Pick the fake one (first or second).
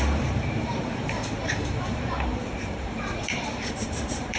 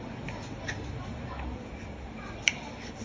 first